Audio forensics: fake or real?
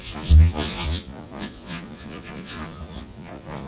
fake